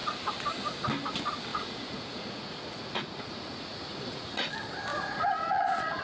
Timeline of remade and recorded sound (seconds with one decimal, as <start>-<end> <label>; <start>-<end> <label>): 0.0-1.5 recorded; 1.5-4.5 remade; 4.5-4.9 recorded; 4.9-6.0 remade